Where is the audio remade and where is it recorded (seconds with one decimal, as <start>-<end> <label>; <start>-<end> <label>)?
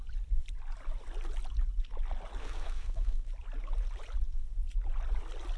0.0-2.4 recorded; 2.4-3.3 remade; 3.3-5.6 recorded